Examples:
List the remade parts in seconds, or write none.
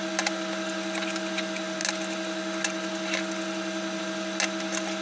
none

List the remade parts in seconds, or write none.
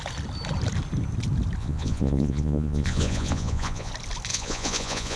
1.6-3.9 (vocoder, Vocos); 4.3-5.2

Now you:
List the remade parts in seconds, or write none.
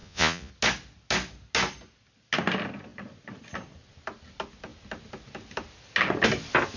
0.0-0.5 (vocoder, Vocos)